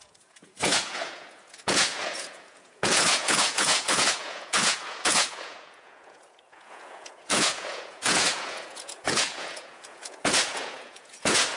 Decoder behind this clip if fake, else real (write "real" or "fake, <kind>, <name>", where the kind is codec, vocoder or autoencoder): fake, vocoder, Vocos